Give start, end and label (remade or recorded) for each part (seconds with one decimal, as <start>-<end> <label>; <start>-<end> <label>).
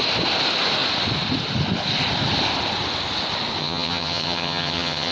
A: 0.0-3.6 recorded; 3.6-5.1 remade